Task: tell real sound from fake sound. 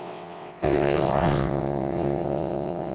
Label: fake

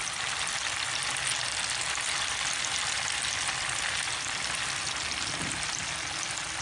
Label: real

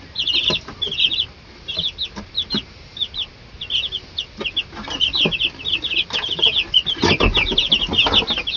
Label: real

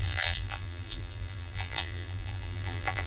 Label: fake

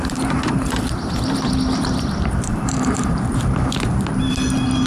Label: fake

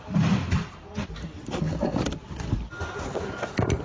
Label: real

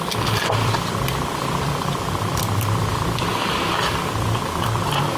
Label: fake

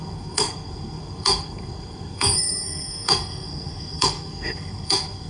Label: fake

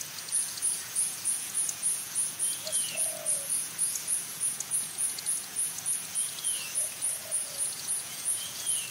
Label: fake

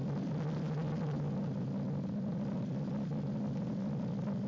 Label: real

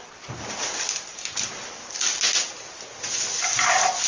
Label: real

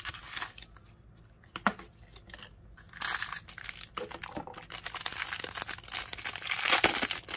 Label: real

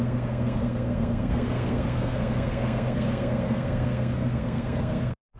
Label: fake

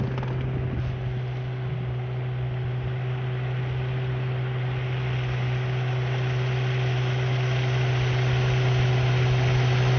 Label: real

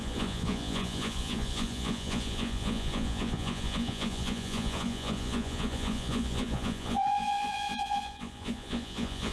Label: fake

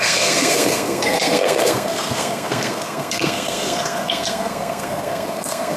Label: fake